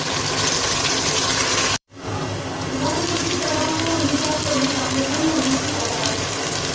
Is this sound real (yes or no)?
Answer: no